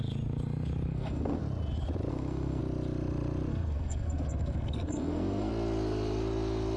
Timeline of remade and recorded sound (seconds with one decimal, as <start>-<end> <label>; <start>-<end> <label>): 0.0-0.9 recorded; 0.9-1.4 remade; 1.4-2.1 recorded; 2.1-2.6 remade; 2.6-3.5 recorded; 3.5-5.5 remade; 5.5-6.8 recorded